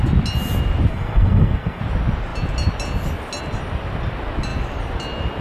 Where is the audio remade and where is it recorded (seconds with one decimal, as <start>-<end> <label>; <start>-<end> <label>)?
0.0-0.9 recorded; 0.9-1.8 remade; 1.8-5.4 recorded

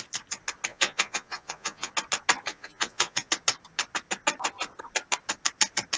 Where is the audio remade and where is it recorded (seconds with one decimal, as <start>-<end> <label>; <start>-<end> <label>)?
0.0-0.7 recorded; 0.7-1.9 remade; 1.9-2.5 recorded; 2.5-3.3 remade; 3.3-6.0 recorded

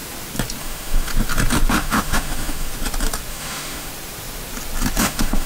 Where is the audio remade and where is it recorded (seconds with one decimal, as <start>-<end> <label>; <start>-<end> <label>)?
0.0-0.6 recorded; 0.6-1.1 remade; 1.1-1.7 recorded; 1.7-2.7 remade; 2.7-3.3 recorded; 3.3-3.9 remade; 3.9-5.0 recorded; 5.0-5.5 remade

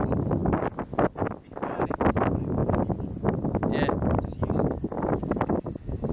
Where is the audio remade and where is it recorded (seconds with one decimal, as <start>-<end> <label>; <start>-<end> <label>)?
0.0-6.1 recorded

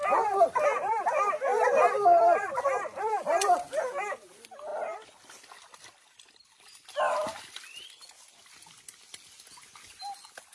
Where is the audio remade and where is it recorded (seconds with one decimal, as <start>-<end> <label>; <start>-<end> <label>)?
0.0-1.5 recorded; 1.5-3.0 remade; 3.0-10.5 recorded

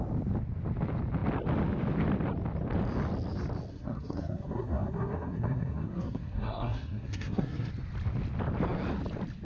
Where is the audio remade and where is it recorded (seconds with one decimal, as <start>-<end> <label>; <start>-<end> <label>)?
0.0-3.7 recorded; 3.7-7.7 remade; 7.7-9.4 recorded

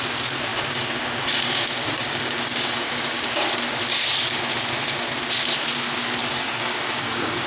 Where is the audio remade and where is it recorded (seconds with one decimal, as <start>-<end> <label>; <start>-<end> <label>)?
0.0-1.8 recorded; 1.8-4.4 remade; 4.4-6.2 recorded; 6.2-7.5 remade

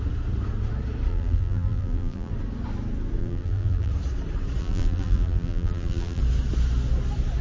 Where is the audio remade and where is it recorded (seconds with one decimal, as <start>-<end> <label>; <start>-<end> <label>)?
0.0-1.1 recorded; 1.1-2.3 remade; 2.3-3.2 recorded; 3.2-3.9 remade; 3.9-4.6 recorded; 4.6-6.2 remade; 6.2-7.4 recorded